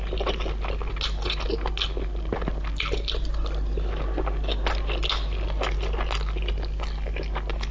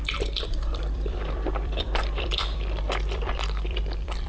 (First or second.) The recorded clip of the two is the first